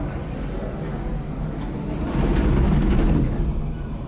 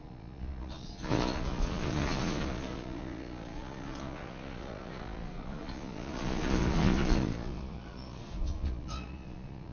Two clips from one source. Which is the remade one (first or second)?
second